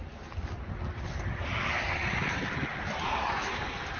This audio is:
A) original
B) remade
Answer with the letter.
A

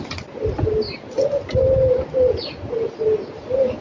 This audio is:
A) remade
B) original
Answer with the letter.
B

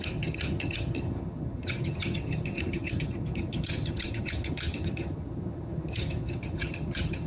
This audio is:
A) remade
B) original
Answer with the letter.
A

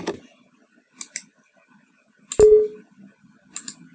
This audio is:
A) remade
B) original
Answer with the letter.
B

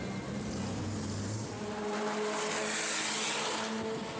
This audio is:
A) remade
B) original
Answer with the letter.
B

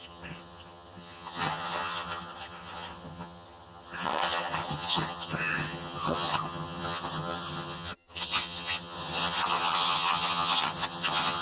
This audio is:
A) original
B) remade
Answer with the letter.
B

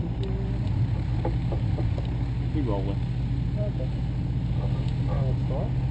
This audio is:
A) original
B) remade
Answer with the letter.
A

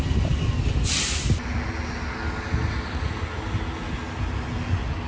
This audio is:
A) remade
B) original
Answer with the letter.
B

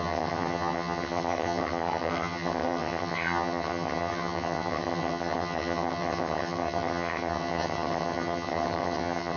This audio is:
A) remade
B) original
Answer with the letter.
A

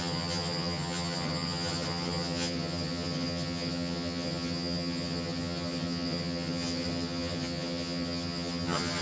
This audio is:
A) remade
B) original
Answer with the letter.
A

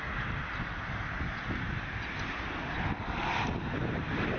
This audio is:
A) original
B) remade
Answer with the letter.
A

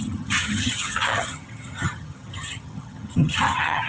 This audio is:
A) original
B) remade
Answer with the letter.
B